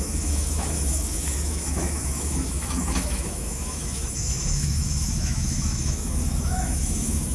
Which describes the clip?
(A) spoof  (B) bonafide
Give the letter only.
A